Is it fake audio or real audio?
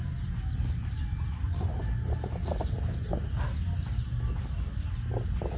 real